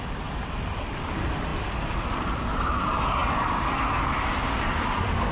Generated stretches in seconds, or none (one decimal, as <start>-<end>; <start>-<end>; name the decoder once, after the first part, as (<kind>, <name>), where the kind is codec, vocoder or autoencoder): none